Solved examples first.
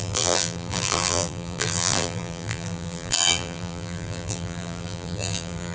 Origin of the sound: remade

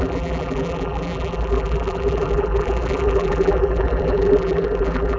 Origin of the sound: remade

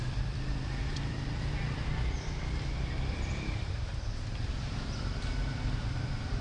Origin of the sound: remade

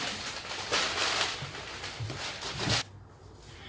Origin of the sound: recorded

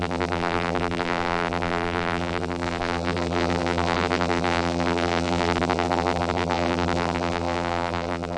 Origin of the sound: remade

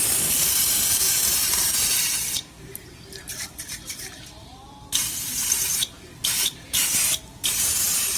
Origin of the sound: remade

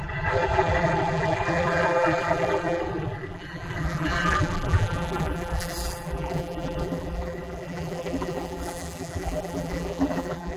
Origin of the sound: remade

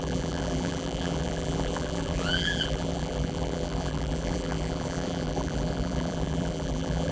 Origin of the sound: remade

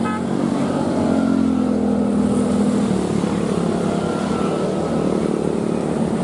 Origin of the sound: recorded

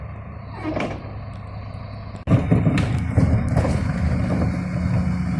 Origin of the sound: recorded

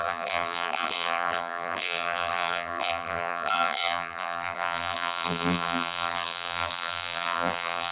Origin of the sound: remade